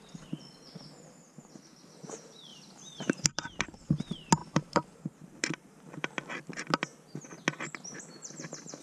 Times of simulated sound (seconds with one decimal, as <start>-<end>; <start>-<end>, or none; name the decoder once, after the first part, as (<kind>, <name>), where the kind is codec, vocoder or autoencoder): 2.5-3.9 (vocoder, BigVGAN v2); 4.4-6.3